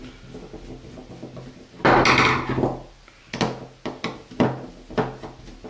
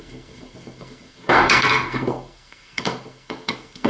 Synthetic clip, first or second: second